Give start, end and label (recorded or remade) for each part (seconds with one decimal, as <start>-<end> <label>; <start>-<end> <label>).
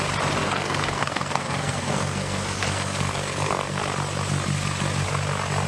0.0-0.4 recorded; 0.4-3.8 remade; 3.8-5.7 recorded